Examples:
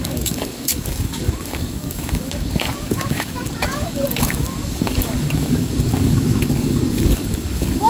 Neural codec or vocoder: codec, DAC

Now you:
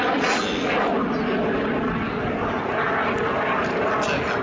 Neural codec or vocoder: none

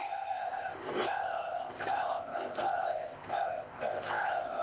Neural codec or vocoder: codec, ZipCodec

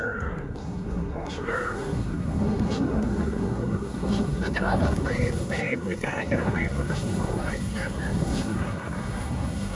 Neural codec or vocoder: codec, SNAC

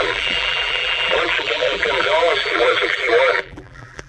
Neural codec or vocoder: vocoder, BigVGAN v2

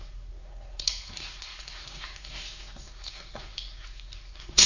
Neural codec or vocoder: codec, SNAC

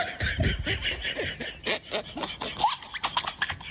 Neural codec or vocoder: none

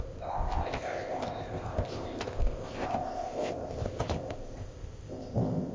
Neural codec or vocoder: codec, ZipCodec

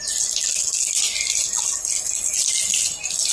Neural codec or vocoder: none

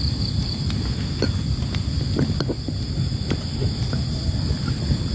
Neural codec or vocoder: none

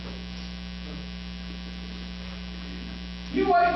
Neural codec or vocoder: none